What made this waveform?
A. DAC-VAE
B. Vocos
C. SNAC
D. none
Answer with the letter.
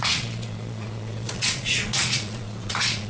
B